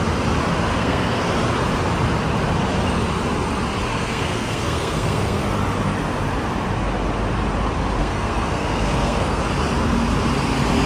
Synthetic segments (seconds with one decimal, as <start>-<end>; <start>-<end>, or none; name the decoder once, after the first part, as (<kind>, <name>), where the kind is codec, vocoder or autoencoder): 0.7-1.3 (codec, SNAC); 3.9-5.4; 8.0-9.4